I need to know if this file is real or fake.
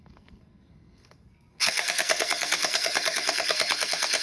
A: fake